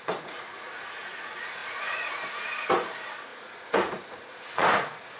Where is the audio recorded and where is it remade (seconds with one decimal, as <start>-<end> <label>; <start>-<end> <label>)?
0.0-5.2 remade